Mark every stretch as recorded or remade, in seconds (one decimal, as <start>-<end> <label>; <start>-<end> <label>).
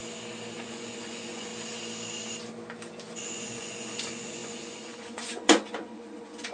0.0-0.6 recorded; 0.6-1.5 remade; 1.5-3.2 recorded; 3.2-6.5 remade